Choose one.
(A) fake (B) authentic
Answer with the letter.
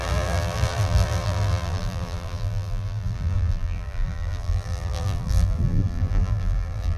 A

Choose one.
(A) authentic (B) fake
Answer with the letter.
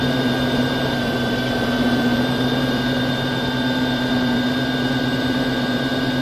B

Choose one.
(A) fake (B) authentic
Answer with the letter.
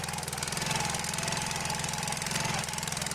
B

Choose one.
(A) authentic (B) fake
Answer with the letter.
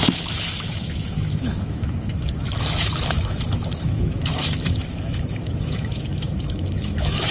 B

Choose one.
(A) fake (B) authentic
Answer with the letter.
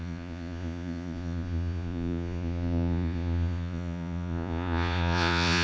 A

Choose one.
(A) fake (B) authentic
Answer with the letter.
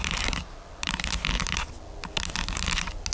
B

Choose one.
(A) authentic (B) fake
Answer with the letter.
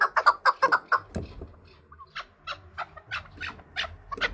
A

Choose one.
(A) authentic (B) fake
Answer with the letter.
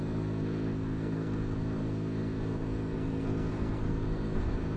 B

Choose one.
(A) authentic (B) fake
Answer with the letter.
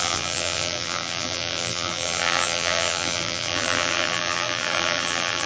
B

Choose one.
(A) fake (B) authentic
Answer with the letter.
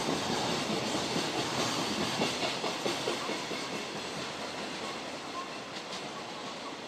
B